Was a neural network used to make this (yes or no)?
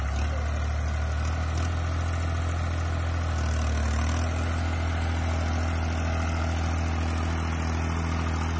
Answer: no